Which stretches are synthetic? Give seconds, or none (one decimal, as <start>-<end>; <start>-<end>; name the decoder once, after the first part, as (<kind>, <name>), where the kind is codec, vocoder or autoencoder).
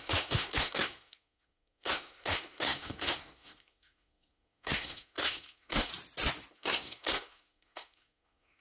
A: 0.0-5.9 (codec, SNAC); 6.5-8.6